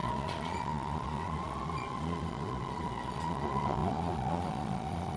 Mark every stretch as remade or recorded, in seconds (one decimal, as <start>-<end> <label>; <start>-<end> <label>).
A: 0.0-5.2 remade

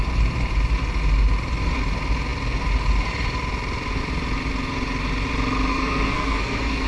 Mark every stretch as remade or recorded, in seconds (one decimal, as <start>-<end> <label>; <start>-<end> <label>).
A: 0.0-5.7 recorded; 5.7-6.9 remade

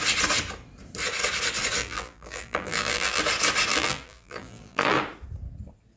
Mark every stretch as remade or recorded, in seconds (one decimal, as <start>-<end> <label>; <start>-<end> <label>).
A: 0.0-1.8 recorded; 1.8-3.2 remade; 3.2-3.7 recorded; 3.7-5.0 remade; 5.0-6.0 recorded